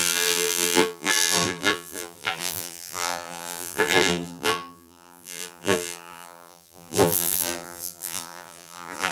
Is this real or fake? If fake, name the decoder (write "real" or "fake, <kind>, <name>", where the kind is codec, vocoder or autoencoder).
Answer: fake, vocoder, BigVGAN v2